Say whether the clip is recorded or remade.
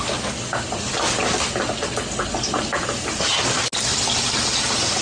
recorded